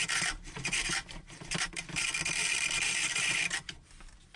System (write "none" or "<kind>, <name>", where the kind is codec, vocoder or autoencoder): vocoder, BigVGAN v2